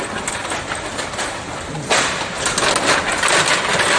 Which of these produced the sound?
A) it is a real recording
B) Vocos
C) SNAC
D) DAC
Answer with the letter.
A